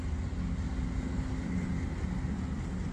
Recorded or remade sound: recorded